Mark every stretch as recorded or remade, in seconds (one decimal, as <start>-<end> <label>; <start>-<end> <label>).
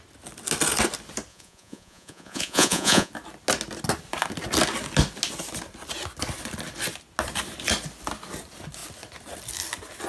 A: 0.0-1.3 recorded; 1.3-3.1 remade; 3.1-10.1 recorded